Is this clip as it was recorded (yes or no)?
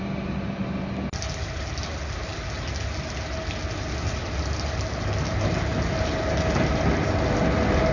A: yes